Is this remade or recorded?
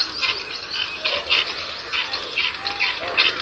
recorded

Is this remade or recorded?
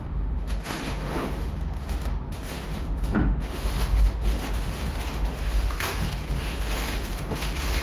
remade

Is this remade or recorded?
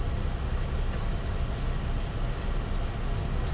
recorded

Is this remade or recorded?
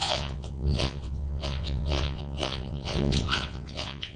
remade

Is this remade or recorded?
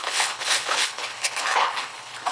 remade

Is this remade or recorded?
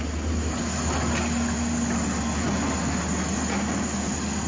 recorded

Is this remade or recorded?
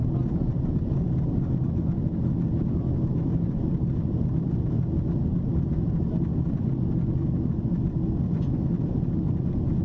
recorded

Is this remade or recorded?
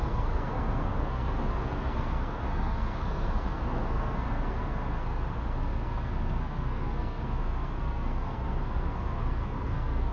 remade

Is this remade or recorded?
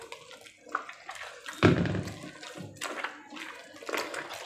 recorded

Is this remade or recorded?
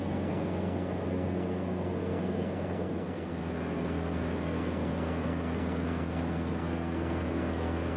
remade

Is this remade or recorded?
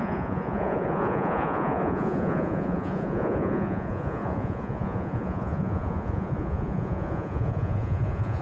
remade